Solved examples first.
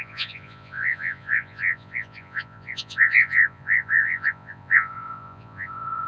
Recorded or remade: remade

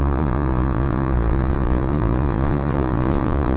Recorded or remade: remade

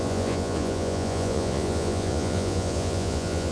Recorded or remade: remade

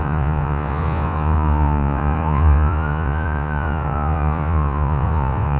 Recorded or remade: remade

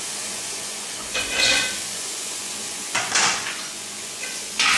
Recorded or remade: remade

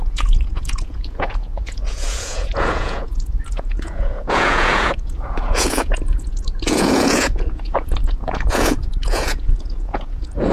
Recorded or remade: remade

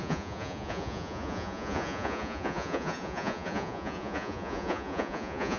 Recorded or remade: remade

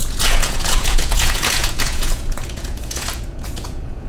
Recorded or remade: remade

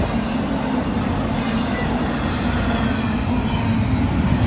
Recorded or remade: recorded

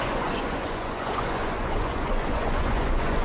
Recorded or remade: remade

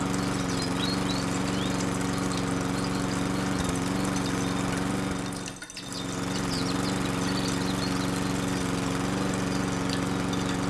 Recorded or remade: recorded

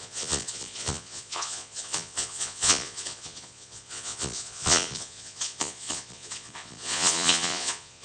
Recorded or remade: remade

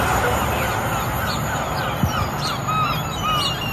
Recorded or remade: recorded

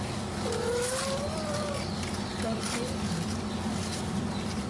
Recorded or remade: recorded